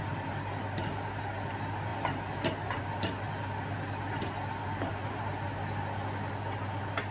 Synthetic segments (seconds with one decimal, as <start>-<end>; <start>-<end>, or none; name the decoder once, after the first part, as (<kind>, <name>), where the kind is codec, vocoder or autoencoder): none